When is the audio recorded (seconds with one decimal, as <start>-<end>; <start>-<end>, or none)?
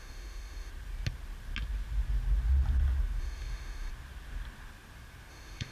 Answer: 0.7-3.2; 3.9-5.3